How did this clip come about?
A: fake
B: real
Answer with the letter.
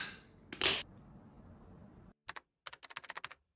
B